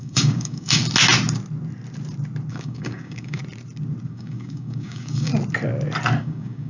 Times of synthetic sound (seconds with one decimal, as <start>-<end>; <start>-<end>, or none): 0.0-0.8; 2.5-3.4; 4.1-5.3; 6.2-6.7